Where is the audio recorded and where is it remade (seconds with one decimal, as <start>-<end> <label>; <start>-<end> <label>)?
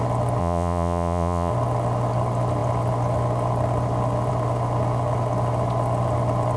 0.0-0.4 recorded; 0.4-1.5 remade; 1.5-6.6 recorded